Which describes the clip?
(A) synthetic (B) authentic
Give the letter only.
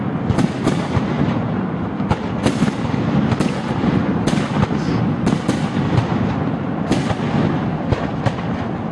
B